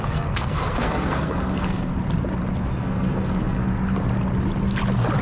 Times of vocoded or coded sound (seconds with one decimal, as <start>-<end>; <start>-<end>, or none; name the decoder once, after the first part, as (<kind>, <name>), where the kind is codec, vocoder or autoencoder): 0.0-1.9 (codec, SNAC); 2.8-3.6